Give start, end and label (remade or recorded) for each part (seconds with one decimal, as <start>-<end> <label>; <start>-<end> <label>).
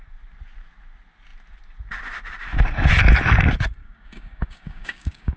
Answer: 0.0-3.8 recorded; 3.8-5.4 remade